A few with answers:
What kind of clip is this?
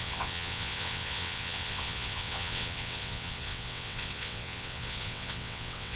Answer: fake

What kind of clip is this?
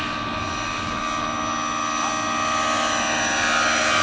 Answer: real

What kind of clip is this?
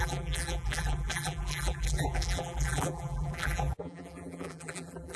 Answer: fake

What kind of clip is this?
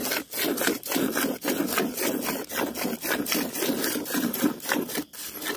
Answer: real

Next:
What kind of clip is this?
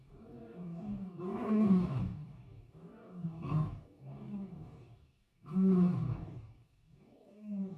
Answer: fake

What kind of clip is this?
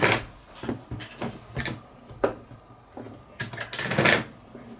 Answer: real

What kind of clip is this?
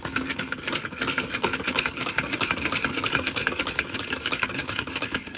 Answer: fake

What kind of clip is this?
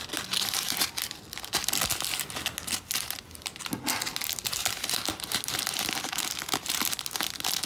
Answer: real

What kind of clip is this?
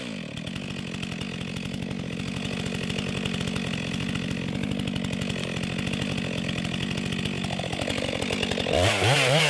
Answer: real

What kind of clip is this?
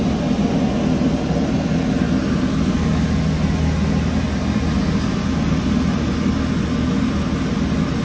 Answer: real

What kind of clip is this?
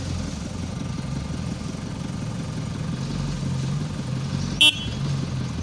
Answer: real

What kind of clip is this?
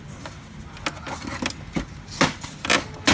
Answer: real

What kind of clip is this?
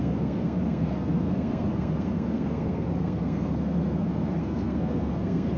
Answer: fake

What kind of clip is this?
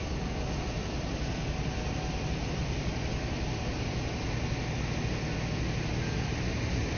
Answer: real